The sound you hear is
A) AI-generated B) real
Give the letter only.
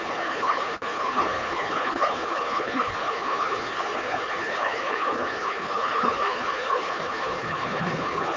A